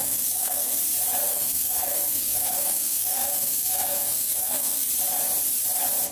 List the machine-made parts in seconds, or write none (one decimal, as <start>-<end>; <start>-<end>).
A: 0.0-0.8; 1.3-4.9